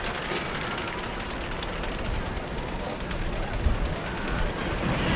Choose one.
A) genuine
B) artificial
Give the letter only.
A